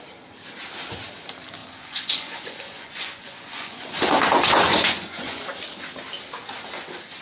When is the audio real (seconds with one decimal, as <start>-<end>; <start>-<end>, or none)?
0.0-1.6; 5.4-7.2